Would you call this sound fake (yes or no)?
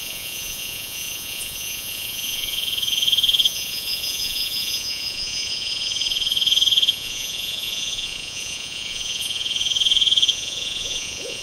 yes